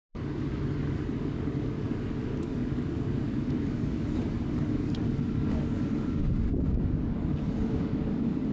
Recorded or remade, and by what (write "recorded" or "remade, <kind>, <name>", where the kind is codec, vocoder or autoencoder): remade, codec, DAC